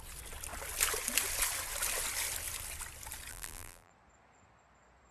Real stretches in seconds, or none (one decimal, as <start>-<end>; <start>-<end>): 0.0-3.3; 3.9-5.1